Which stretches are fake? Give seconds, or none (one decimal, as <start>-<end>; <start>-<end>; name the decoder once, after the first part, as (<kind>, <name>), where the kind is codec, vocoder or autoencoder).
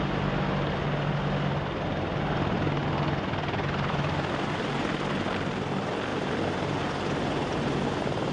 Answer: none